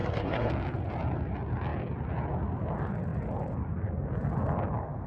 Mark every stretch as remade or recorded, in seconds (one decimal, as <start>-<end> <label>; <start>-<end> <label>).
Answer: 0.0-0.5 remade; 0.5-5.1 recorded